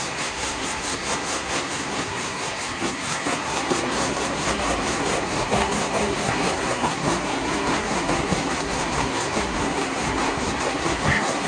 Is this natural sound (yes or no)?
no